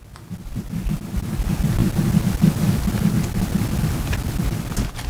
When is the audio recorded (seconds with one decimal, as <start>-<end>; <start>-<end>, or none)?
0.0-5.1